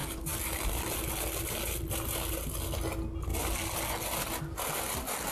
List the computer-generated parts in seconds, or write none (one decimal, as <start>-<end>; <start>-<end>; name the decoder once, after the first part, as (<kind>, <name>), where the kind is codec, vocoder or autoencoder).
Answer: none